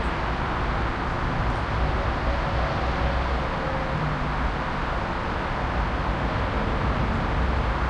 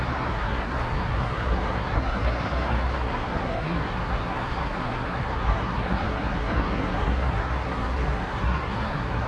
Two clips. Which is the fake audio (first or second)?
second